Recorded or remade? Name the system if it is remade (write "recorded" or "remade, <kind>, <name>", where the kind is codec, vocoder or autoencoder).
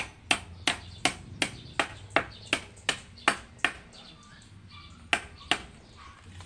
recorded